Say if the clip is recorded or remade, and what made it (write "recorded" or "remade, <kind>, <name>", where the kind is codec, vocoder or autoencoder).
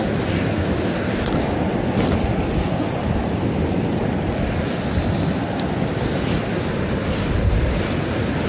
recorded